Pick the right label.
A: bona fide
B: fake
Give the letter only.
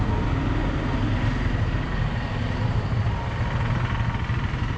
A